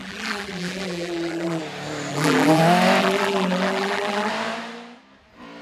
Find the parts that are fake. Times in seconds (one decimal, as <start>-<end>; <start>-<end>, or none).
0.0-1.6; 2.1-2.6; 3.0-4.3